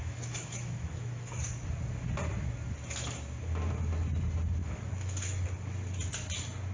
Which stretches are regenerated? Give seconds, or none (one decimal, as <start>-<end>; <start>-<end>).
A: 0.0-1.4; 4.6-5.4

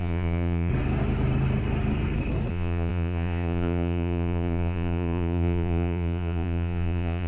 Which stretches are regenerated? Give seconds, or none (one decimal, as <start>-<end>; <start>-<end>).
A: 0.0-0.7; 2.5-7.3

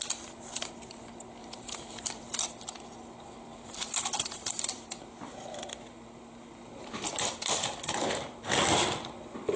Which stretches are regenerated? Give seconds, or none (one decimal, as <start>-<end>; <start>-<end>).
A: 1.4-2.4; 3.5-8.4

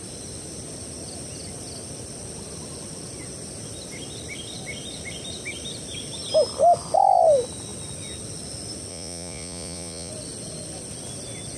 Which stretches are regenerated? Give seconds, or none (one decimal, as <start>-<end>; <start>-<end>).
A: 8.9-10.1

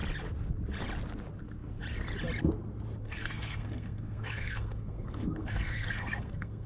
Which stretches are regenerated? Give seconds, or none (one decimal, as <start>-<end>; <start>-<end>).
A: 3.0-6.7

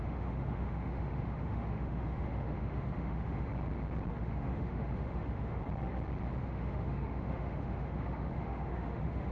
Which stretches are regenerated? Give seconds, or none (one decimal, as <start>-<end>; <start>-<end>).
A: 0.0-3.5; 4.1-5.6; 6.4-9.3